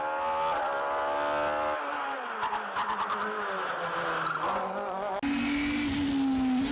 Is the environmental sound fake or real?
real